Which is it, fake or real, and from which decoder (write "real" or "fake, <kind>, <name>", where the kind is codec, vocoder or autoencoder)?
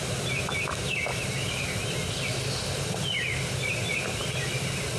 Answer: real